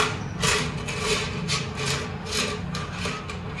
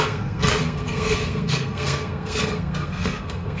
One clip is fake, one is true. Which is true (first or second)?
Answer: first